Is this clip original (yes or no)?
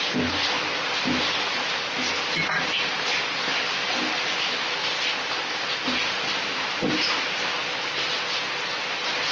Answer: yes